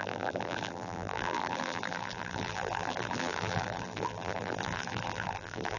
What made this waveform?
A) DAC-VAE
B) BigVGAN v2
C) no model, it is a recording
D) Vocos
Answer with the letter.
B